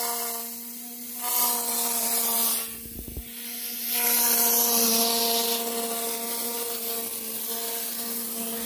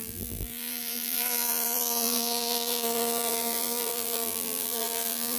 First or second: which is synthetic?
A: second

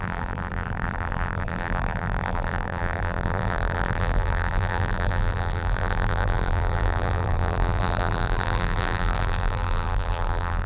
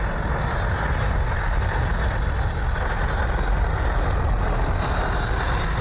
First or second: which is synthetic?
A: first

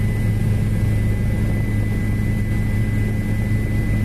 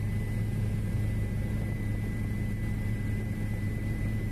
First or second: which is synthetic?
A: second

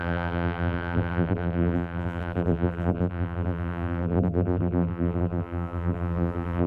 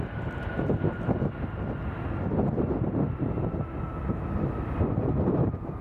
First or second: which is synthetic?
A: first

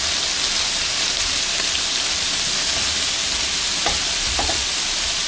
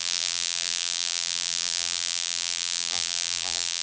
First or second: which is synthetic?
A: second